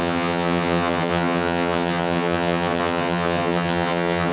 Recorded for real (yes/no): no